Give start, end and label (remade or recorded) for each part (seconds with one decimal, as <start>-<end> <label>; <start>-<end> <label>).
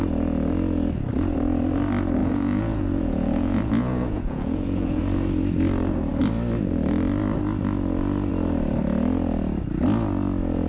0.0-2.2 recorded; 2.2-5.0 remade; 5.0-10.7 recorded